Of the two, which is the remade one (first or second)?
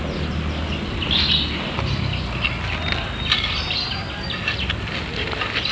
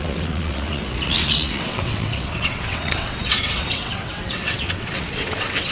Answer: second